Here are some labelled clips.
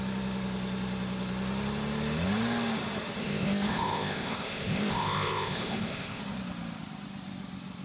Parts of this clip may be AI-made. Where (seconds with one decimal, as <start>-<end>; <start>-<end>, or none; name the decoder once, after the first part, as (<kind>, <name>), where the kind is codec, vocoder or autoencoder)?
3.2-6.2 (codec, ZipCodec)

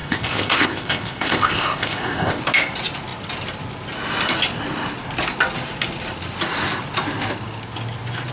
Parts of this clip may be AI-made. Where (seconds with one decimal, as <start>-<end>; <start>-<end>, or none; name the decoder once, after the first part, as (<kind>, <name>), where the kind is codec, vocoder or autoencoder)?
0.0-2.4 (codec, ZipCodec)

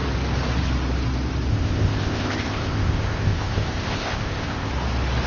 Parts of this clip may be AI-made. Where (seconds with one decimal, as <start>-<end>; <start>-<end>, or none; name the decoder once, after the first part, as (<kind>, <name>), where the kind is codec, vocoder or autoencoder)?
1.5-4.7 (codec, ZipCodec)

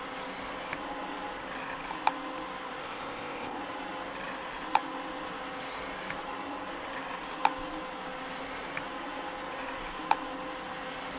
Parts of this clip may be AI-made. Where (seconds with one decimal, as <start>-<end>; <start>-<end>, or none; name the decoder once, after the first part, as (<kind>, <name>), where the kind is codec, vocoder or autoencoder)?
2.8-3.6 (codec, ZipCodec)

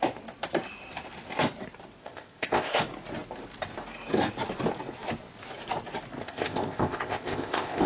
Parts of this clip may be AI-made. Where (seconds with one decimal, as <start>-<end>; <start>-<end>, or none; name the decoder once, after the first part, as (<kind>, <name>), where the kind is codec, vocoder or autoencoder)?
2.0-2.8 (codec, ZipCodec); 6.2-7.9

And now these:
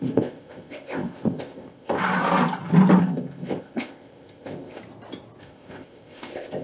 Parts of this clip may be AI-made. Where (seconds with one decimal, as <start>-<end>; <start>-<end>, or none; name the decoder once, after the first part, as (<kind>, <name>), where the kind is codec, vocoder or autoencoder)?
0.0-2.0 (codec, ZipCodec); 3.0-4.8; 5.4-6.6